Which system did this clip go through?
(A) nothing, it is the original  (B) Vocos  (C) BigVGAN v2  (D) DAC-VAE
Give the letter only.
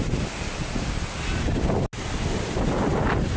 A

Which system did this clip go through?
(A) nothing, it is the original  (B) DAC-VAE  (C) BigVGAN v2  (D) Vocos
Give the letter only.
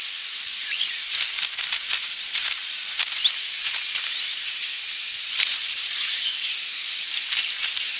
C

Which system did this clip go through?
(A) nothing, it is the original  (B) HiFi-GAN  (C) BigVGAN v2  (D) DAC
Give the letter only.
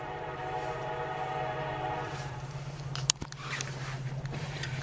C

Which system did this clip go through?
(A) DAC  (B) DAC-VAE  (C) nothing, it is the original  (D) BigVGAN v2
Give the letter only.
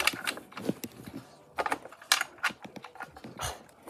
C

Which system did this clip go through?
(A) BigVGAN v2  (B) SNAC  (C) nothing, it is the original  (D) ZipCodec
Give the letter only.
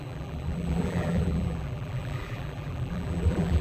A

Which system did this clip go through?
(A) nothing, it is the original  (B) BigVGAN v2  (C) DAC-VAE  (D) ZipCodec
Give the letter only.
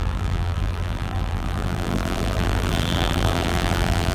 B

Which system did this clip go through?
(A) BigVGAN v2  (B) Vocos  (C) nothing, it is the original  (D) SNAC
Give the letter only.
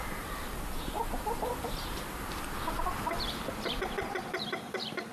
A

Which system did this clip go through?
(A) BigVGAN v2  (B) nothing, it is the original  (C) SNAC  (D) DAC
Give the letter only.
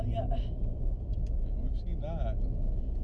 B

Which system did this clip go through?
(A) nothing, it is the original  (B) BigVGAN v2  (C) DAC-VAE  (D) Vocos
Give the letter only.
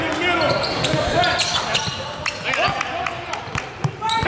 A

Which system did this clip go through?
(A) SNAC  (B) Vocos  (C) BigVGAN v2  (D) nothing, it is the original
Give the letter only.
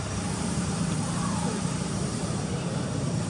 C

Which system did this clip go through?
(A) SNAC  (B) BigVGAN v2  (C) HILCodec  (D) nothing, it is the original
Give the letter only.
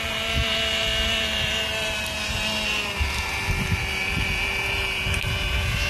B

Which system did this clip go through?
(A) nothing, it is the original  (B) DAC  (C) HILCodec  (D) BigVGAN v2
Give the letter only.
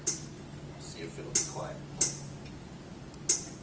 A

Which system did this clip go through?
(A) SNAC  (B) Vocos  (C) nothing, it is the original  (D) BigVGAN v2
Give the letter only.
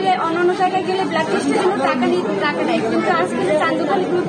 C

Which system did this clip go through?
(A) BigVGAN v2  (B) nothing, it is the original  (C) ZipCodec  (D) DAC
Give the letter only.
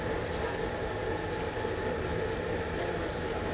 B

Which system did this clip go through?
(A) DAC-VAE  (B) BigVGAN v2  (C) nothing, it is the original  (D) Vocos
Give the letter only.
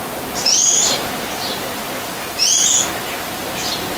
B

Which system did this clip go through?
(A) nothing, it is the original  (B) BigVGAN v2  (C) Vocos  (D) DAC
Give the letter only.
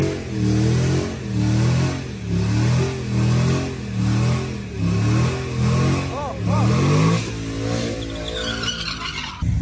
A